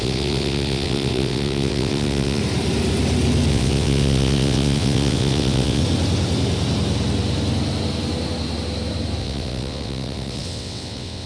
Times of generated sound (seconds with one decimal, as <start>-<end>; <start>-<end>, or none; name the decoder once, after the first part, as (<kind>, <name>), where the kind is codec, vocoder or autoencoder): 0.0-2.4 (vocoder, WaveNeXt); 3.5-5.8; 9.2-11.3